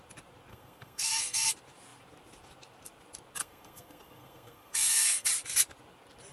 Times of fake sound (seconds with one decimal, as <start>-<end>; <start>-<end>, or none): 0.5-1.5; 3.4-5.3